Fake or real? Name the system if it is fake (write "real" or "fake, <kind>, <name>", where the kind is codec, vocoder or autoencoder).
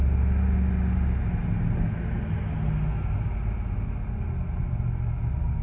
real